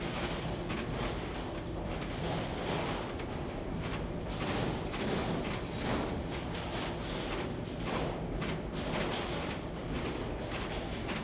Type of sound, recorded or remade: recorded